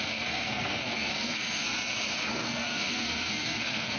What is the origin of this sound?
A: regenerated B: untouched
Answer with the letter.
A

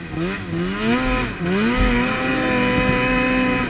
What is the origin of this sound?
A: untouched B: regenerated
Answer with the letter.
A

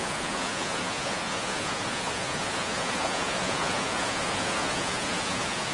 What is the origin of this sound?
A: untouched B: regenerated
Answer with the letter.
B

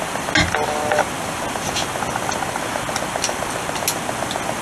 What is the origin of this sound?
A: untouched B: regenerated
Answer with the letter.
A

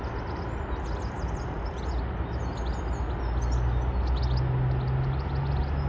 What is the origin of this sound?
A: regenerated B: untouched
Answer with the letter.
B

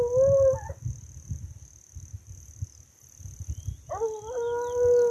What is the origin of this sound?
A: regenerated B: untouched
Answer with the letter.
B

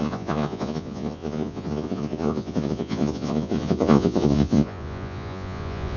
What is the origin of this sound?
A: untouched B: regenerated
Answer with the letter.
B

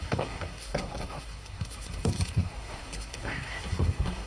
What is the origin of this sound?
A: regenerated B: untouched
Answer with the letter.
A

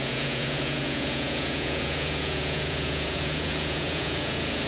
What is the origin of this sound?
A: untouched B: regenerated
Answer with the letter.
B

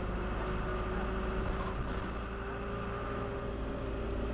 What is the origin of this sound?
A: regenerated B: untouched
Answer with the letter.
B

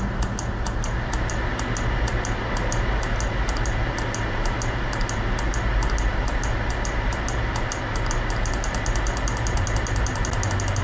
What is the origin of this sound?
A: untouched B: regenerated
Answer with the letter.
A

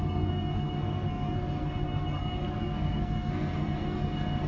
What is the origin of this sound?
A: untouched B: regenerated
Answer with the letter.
B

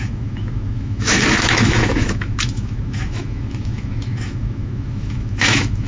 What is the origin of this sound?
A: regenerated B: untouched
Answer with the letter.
A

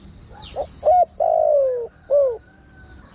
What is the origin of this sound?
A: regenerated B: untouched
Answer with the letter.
B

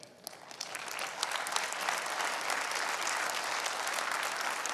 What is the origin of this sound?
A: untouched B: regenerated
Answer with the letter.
A